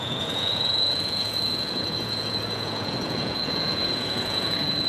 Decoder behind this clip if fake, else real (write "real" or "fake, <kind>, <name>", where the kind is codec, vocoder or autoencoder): fake, vocoder, Vocos